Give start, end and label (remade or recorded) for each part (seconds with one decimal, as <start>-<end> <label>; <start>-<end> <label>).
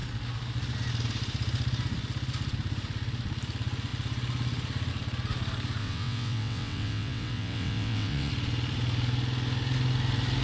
0.0-5.8 recorded; 5.8-8.3 remade; 8.3-10.4 recorded